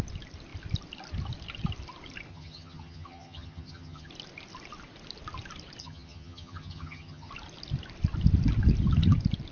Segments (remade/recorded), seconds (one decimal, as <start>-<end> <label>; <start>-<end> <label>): 0.0-2.3 recorded; 2.3-4.1 remade; 4.1-5.8 recorded; 5.8-7.3 remade; 7.3-9.5 recorded